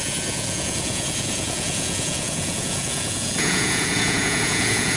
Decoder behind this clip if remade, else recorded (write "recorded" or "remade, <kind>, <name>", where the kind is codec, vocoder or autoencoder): remade, vocoder, Vocos